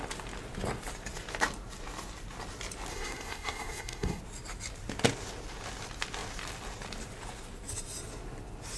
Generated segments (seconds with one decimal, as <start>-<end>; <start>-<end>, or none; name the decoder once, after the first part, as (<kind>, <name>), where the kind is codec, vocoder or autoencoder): 2.9-4.2 (codec, SNAC)